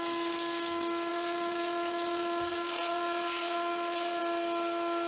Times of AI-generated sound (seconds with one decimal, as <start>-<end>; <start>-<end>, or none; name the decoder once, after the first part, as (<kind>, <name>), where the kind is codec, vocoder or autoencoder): 1.1-4.2 (vocoder, Vocos)